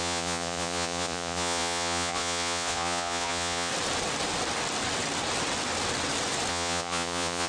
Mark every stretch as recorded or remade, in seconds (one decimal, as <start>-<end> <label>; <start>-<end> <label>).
0.0-3.7 remade; 3.7-6.5 recorded; 6.5-7.5 remade